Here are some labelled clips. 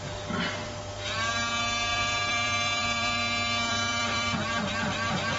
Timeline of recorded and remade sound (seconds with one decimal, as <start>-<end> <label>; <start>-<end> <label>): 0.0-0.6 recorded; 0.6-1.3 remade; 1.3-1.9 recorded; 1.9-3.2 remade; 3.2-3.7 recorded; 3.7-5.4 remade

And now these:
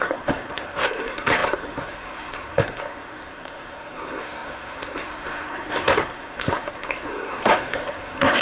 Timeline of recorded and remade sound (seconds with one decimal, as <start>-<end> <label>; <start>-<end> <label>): 0.0-8.4 remade

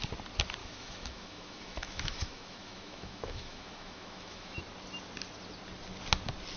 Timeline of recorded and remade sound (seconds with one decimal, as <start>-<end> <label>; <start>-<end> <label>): 0.0-0.6 recorded; 0.6-4.6 remade; 4.6-6.6 recorded